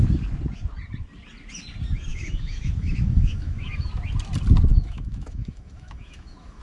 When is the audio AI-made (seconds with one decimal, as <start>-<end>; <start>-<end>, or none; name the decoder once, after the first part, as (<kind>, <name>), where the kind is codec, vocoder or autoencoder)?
2.1-3.9 (autoencoder, DAC-VAE); 4.7-6.6